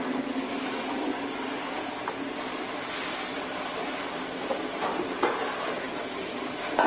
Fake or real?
real